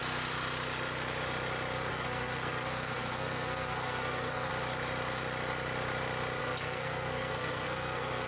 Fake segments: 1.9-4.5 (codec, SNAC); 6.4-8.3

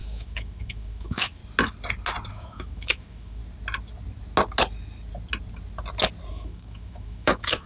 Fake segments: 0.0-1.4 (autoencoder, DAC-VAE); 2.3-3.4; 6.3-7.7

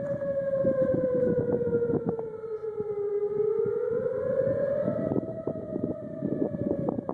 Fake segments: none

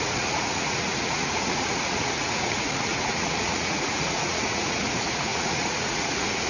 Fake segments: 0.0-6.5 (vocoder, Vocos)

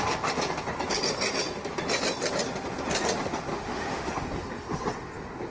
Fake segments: 3.5-4.1 (autoencoder, DAC-VAE)